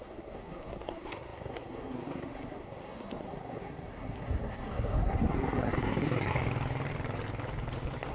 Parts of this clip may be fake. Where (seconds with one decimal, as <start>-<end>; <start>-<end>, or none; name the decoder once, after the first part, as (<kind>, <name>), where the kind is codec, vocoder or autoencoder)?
0.0-6.4 (codec, SNAC)